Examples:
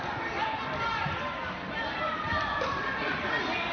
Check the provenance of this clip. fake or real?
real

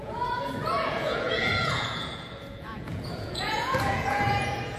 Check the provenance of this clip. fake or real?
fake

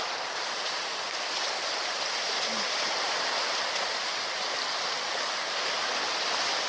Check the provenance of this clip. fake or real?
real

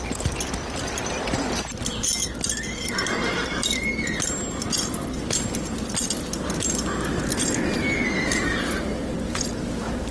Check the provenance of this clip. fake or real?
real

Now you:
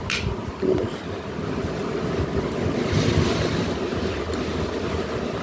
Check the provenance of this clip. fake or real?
real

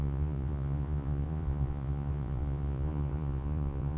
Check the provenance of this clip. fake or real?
fake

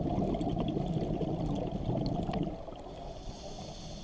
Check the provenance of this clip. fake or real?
real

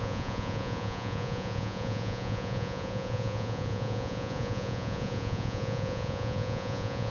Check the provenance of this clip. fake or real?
fake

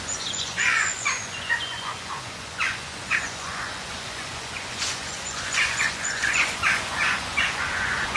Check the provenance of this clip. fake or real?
fake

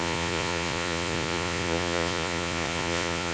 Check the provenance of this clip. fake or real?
fake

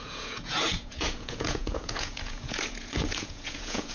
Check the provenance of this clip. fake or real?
fake